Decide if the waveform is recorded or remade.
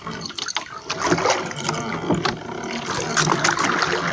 recorded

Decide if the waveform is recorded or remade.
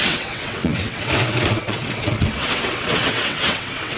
remade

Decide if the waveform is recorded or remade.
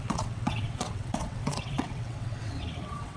remade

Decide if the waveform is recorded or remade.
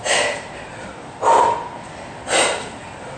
recorded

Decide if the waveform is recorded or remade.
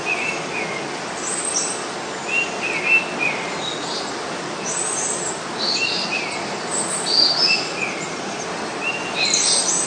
recorded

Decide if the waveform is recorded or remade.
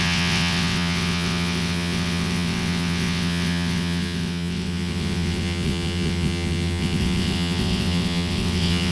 remade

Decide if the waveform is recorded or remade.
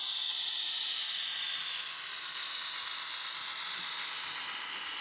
recorded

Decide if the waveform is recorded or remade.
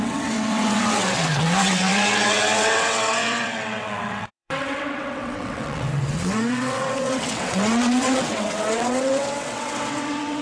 remade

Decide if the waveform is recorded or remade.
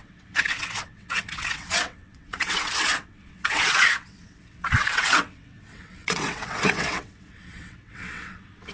remade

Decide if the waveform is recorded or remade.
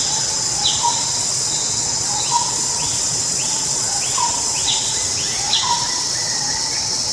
remade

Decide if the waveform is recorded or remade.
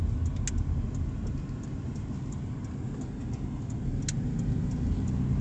recorded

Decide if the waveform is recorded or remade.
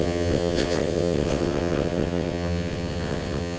remade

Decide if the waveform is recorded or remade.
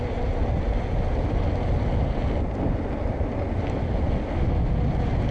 recorded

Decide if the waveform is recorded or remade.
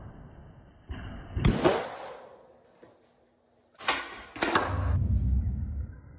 recorded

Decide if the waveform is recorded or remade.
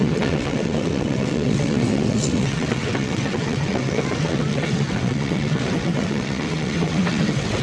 remade